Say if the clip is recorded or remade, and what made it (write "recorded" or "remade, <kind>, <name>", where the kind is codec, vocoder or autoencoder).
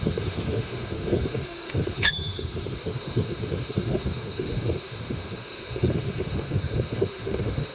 remade, autoencoder, DAC-VAE